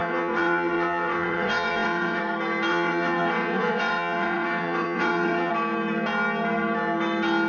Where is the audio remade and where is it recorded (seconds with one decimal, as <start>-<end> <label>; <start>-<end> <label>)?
0.0-2.2 remade; 2.2-2.7 recorded; 2.7-5.5 remade; 5.5-7.5 recorded